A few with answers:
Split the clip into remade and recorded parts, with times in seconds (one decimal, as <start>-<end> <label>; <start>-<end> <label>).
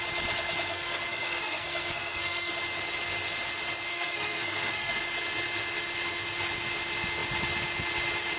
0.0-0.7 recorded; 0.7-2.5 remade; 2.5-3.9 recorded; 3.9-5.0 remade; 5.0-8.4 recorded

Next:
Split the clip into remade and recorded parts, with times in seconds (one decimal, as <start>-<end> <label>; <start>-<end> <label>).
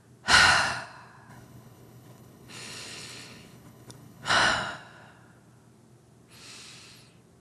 0.0-1.3 recorded; 1.3-4.3 remade; 4.3-7.4 recorded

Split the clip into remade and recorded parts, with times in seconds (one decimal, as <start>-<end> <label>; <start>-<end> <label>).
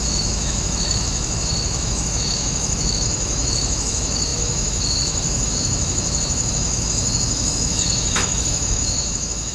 0.0-9.5 remade